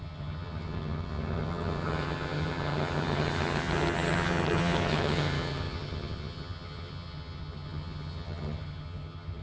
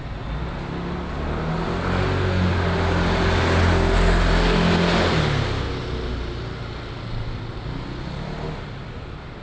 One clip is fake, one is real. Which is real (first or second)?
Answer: second